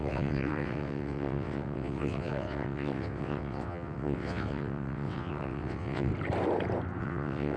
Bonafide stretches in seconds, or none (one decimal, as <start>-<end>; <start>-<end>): 6.1-7.0